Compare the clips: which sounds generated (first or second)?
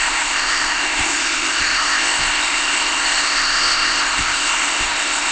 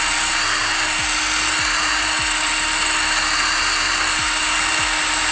first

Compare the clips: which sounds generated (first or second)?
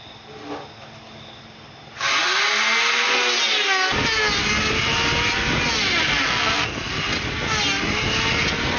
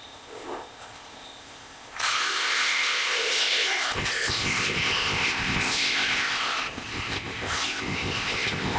second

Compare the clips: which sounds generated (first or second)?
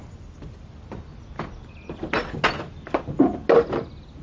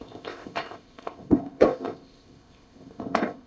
second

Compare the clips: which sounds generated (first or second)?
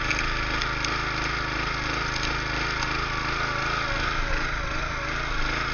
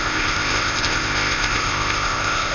second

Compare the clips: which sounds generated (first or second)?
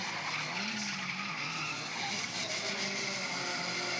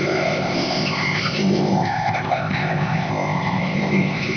second